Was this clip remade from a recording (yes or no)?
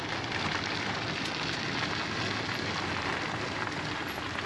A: no